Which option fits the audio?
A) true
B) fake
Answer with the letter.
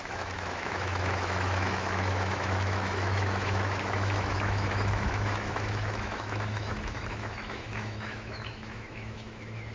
B